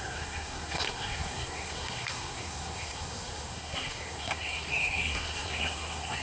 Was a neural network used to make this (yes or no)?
yes